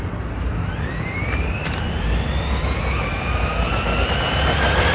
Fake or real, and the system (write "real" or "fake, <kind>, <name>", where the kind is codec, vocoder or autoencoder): real